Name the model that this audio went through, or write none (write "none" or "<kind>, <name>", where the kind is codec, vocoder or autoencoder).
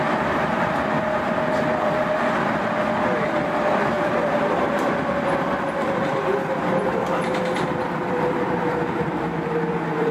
vocoder, BigVGAN v2